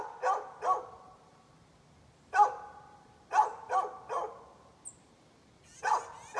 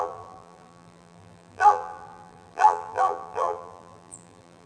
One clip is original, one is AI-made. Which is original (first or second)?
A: first